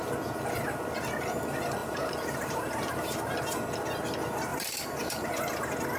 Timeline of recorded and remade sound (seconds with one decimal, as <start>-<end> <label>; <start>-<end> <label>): 0.0-1.8 recorded; 1.8-3.4 remade; 3.4-4.5 recorded; 4.5-5.3 remade; 5.3-6.0 recorded